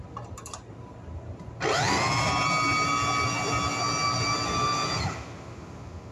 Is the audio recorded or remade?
recorded